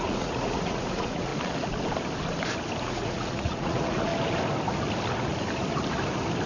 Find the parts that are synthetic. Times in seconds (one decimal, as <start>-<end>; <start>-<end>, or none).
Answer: 0.0-1.3; 2.8-4.1